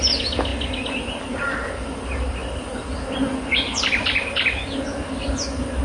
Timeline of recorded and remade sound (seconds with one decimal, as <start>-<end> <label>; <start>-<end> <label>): 0.0-5.8 recorded